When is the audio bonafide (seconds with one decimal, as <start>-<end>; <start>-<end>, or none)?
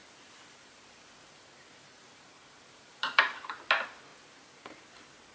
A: 3.2-4.1; 4.8-5.3